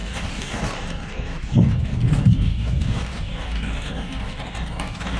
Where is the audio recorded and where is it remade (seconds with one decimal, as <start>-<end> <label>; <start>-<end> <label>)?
0.0-5.2 remade

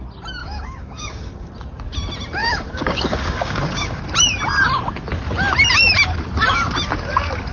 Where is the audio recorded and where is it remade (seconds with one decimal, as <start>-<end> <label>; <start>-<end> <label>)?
0.0-0.4 recorded; 0.4-1.5 remade; 1.5-2.4 recorded; 2.4-4.0 remade; 4.0-7.5 recorded

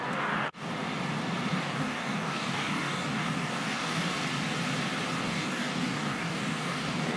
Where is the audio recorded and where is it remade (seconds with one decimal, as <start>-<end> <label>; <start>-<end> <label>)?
0.0-0.7 remade; 0.7-1.6 recorded; 1.6-4.1 remade; 4.1-5.2 recorded; 5.2-7.2 remade

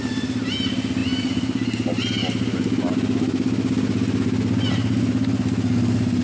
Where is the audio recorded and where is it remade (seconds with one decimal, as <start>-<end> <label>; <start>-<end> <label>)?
0.0-6.2 recorded

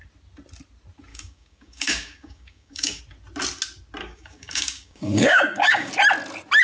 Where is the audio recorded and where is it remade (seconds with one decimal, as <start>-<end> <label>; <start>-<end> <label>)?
0.0-1.1 recorded; 1.1-3.0 remade; 3.0-4.0 recorded; 4.0-5.9 remade; 5.9-6.6 recorded

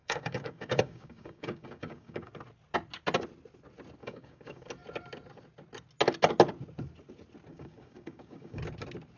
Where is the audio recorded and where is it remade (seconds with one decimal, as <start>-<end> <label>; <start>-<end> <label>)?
0.0-2.3 remade; 2.3-4.0 recorded; 4.0-4.7 remade; 4.7-7.5 recorded; 7.5-8.6 remade; 8.6-9.2 recorded

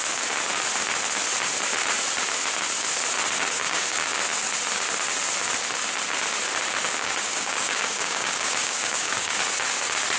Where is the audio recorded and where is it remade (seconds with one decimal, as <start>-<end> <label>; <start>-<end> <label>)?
0.0-3.6 recorded; 3.6-4.2 remade; 4.2-7.0 recorded; 7.0-9.4 remade; 9.4-10.2 recorded

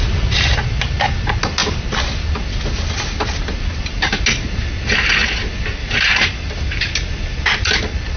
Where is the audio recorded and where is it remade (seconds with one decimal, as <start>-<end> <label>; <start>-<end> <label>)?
0.0-8.2 recorded